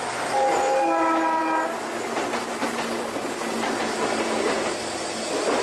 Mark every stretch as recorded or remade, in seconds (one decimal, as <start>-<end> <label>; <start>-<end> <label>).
0.0-5.6 recorded